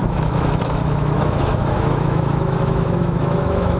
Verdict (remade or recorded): remade